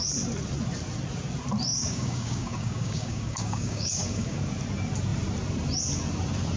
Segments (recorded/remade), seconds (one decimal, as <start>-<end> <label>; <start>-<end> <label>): 0.0-1.7 recorded; 1.7-4.4 remade; 4.4-6.6 recorded